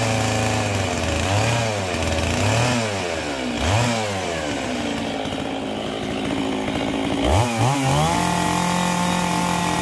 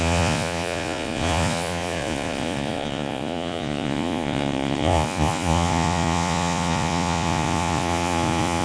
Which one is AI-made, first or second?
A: second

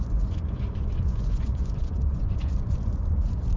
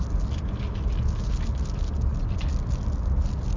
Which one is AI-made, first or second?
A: first